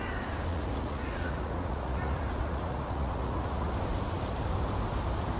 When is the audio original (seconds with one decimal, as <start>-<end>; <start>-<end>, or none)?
0.0-0.5; 3.7-5.4